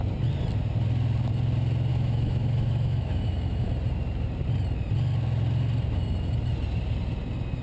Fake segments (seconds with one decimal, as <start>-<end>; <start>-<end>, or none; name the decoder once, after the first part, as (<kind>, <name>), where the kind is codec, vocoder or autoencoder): 1.9-3.7 (autoencoder, DAC-VAE)